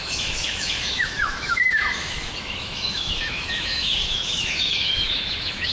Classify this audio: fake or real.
fake